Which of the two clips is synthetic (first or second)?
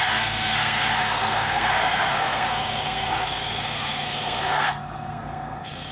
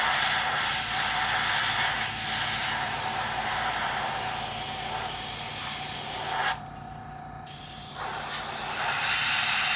first